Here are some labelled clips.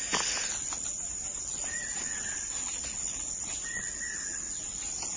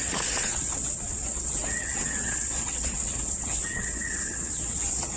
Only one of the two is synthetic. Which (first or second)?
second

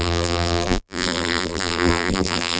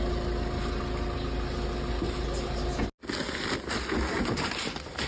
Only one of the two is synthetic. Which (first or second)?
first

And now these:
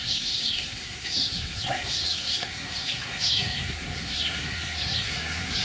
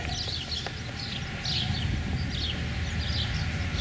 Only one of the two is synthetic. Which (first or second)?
first